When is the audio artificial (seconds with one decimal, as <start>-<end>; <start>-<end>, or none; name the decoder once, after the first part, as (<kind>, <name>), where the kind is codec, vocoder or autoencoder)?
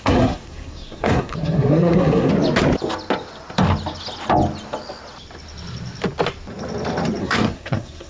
0.0-2.3 (codec, SNAC); 7.2-8.1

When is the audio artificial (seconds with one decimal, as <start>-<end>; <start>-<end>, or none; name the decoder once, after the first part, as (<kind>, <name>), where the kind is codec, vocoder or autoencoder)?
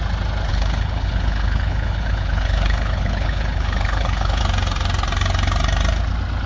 0.5-4.4 (codec, HILCodec)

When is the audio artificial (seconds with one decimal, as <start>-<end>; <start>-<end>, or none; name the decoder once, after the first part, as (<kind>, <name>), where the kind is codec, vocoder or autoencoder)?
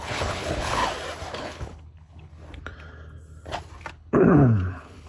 0.0-0.8 (codec, HILCodec); 1.3-2.3; 3.9-5.1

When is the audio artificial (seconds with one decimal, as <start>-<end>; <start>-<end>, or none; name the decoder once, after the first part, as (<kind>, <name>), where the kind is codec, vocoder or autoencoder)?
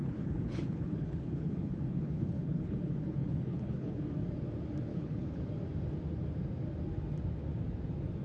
0.0-4.0 (codec, HILCodec); 4.9-5.5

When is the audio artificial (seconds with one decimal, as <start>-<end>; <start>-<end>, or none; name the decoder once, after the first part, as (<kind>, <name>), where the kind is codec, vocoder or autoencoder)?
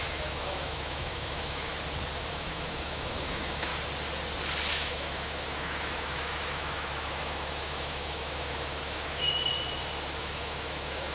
0.0-1.7 (autoencoder, DAC-VAE); 2.3-3.7; 4.7-9.5; 10.2-11.1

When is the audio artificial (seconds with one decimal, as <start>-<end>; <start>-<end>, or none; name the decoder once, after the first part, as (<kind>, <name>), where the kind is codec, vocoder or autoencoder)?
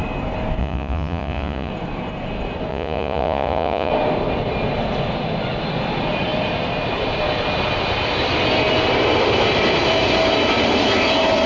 0.6-1.7 (vocoder, Vocos); 2.7-3.9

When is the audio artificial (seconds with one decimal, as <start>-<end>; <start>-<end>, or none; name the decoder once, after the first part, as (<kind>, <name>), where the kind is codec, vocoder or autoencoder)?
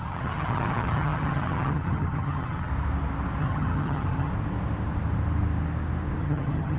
0.0-2.7 (vocoder, HiFi-GAN); 3.4-4.3; 6.2-6.8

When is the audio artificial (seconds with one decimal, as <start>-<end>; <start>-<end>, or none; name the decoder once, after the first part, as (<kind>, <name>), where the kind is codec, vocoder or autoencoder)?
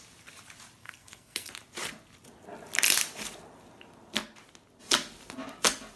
0.8-1.5 (codec, SNAC)